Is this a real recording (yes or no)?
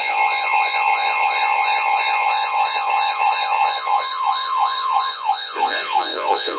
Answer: no